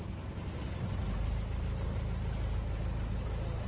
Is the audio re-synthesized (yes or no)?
no